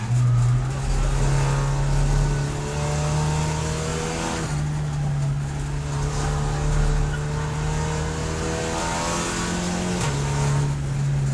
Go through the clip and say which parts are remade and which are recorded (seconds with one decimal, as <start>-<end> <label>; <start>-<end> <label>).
0.0-11.3 recorded

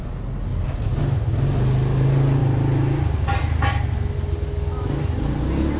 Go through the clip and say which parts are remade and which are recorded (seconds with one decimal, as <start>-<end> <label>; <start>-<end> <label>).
0.0-5.8 recorded

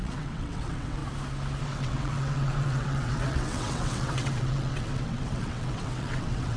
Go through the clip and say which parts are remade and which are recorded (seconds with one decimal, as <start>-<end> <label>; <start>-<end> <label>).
0.0-1.0 remade; 1.0-1.6 recorded; 1.6-6.6 remade

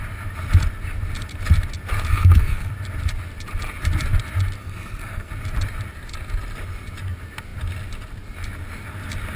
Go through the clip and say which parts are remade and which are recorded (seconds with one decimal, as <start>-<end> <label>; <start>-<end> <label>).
0.0-2.1 recorded; 2.1-2.7 remade; 2.7-4.6 recorded; 4.6-5.3 remade; 5.3-9.4 recorded

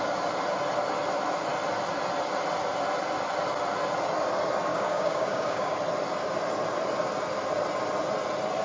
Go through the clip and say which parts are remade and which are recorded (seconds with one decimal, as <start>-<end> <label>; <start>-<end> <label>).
0.0-4.7 recorded; 4.7-5.7 remade; 5.7-8.6 recorded

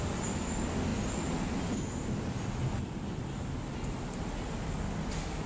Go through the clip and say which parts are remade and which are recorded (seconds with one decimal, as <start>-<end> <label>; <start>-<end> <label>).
0.0-5.5 recorded

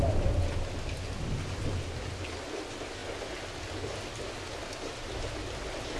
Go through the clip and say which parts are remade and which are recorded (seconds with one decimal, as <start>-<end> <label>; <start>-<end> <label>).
0.0-6.0 recorded

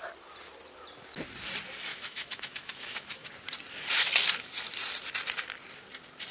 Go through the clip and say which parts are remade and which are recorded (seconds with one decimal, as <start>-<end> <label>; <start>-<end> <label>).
0.0-1.9 recorded; 1.9-3.3 remade; 3.3-6.3 recorded